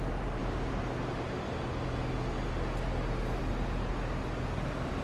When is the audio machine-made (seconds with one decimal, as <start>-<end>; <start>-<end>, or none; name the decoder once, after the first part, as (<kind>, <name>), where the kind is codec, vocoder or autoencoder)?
none